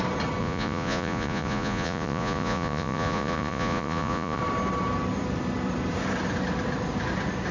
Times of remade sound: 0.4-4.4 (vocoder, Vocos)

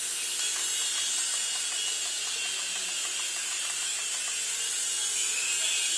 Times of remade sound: none

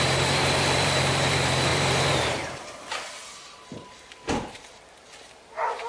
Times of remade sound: 0.0-5.9 (vocoder, BigVGAN v2)

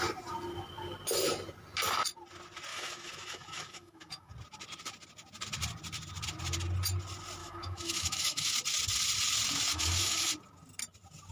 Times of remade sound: 2.7-4.3 (autoencoder, DAC-VAE); 7.4-8.5; 9.7-10.3

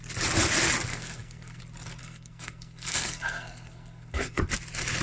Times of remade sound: 0.9-1.6 (codec, SNAC); 2.0-4.4